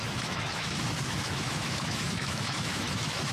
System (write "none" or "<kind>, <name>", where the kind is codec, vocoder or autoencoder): autoencoder, DAC-VAE